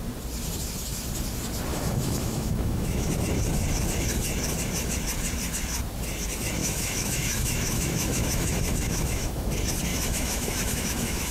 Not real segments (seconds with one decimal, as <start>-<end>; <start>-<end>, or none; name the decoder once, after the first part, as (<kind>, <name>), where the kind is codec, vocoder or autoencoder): 1.7-3.1 (autoencoder, DAC-VAE); 6.6-9.5; 9.9-11.3